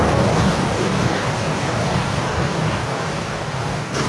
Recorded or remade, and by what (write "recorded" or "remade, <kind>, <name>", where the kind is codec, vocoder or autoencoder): remade, codec, DAC